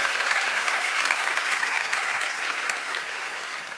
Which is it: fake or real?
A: fake